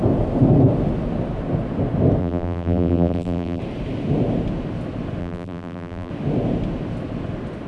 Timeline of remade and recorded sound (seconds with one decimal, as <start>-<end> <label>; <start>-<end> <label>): 0.0-2.2 recorded; 2.2-3.6 remade; 3.6-5.2 recorded; 5.2-6.1 remade; 6.1-7.7 recorded